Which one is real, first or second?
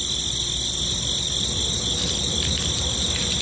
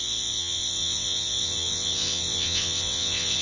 first